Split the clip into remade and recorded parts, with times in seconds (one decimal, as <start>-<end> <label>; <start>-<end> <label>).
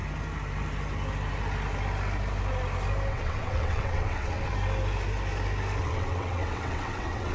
0.0-3.1 recorded; 3.1-4.5 remade; 4.5-5.8 recorded; 5.8-7.3 remade